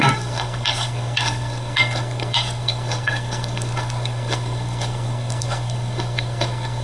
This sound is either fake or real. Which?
fake